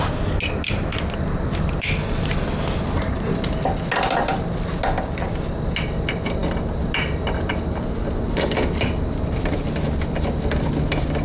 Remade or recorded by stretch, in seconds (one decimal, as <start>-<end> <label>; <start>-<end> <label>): 0.0-11.2 recorded